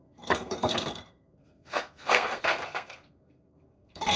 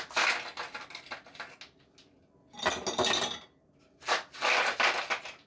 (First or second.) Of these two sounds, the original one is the second